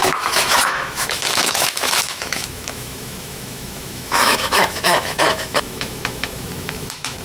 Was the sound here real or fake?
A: fake